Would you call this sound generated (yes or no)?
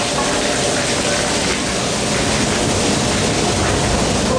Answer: no